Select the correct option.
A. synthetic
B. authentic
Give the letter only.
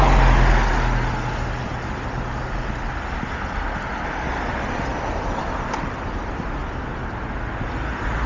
B